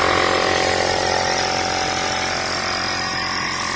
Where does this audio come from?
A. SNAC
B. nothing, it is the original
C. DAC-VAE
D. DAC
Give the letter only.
B